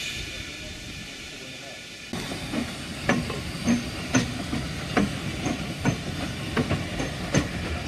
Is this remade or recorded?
recorded